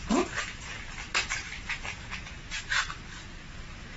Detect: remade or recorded recorded